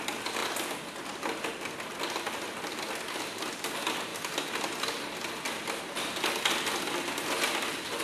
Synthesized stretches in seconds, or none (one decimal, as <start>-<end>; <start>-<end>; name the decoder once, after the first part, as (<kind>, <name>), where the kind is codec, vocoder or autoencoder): none